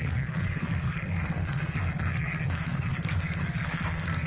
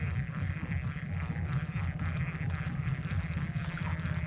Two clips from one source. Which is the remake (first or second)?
first